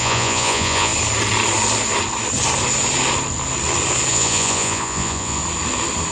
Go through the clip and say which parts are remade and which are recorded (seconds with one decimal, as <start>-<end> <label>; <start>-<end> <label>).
0.0-0.9 remade; 0.9-4.1 recorded; 4.1-5.4 remade; 5.4-6.1 recorded